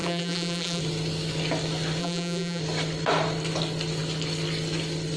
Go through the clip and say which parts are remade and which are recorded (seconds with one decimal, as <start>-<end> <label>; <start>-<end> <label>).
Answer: 0.0-0.8 remade; 0.8-2.0 recorded; 2.0-2.6 remade; 2.6-5.2 recorded